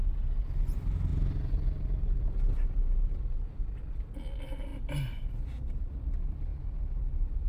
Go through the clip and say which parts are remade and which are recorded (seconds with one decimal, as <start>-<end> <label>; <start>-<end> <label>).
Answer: 0.0-7.5 recorded